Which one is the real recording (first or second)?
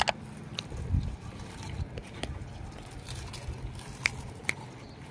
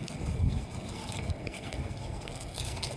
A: first